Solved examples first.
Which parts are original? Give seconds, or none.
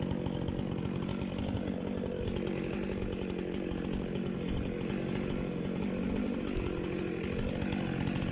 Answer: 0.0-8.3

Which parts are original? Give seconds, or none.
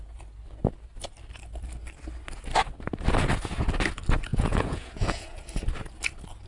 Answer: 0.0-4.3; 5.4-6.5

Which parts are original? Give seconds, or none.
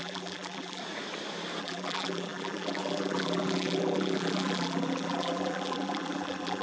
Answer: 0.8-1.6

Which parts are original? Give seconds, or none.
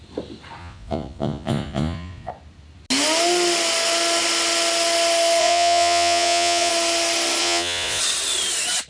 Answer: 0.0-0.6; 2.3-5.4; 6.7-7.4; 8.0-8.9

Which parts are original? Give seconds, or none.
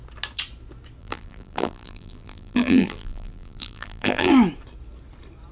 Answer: 0.0-1.0; 4.3-5.5